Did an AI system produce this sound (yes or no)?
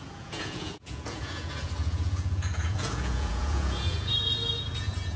yes